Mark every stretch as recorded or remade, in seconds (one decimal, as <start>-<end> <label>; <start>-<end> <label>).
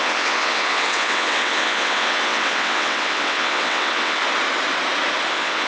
0.0-4.2 remade; 4.2-5.3 recorded; 5.3-5.7 remade